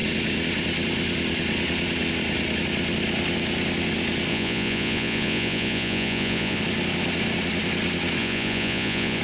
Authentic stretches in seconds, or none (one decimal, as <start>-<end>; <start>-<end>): 0.0-4.3; 6.6-8.2